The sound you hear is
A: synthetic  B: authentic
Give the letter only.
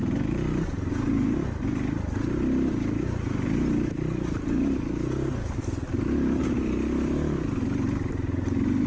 B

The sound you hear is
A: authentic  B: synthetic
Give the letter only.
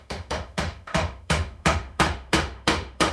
B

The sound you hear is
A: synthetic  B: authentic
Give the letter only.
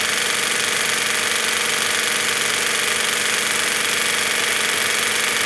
B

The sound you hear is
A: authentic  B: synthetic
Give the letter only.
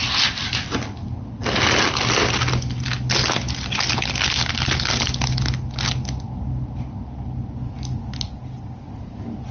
A